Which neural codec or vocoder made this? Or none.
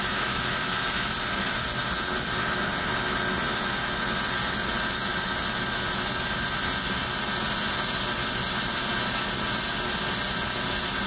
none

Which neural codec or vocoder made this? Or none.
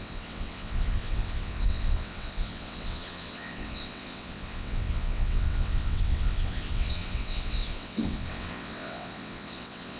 vocoder, WaveNeXt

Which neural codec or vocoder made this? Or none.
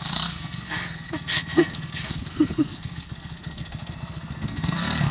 codec, SNAC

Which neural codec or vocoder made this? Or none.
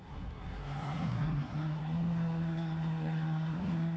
codec, SNAC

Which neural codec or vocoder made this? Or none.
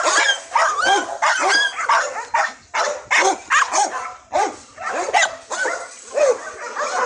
none